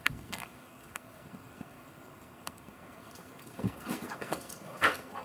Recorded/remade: remade